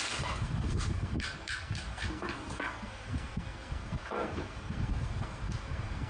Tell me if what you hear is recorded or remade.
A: remade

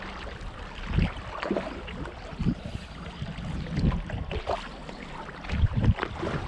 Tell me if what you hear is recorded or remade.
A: recorded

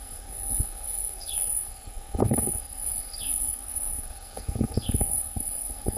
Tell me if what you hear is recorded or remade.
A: remade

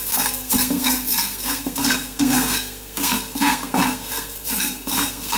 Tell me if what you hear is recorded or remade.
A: remade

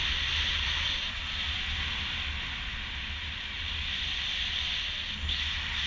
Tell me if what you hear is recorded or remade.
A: recorded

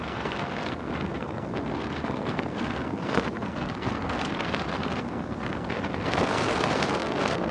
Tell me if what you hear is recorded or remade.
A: remade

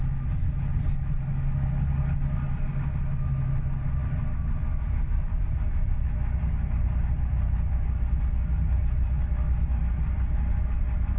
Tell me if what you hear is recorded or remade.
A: recorded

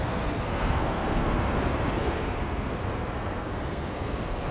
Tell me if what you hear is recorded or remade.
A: remade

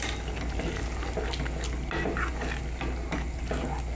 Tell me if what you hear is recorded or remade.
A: recorded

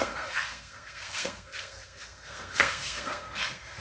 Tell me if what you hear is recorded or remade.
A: remade